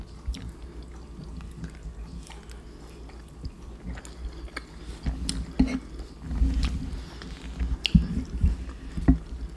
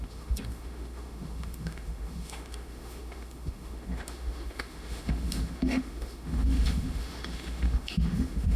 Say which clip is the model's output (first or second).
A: second